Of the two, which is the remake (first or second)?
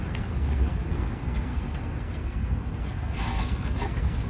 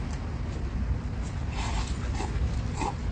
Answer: first